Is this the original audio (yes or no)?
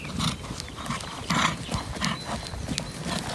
yes